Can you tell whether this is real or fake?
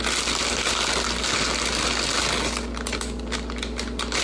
real